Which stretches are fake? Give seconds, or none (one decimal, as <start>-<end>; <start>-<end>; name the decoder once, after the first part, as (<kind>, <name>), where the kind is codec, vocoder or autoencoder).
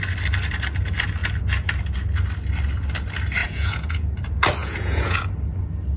3.4-4.1 (vocoder, Vocos); 4.6-5.2